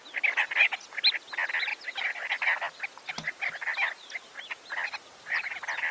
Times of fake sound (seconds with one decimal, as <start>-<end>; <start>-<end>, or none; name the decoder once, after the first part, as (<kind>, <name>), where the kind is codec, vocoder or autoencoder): none